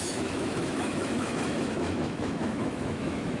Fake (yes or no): yes